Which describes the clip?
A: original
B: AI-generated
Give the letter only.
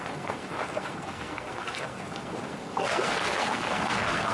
B